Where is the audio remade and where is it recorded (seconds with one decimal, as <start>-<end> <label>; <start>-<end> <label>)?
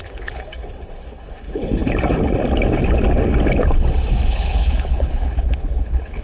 0.0-1.8 remade; 1.8-4.3 recorded; 4.3-6.2 remade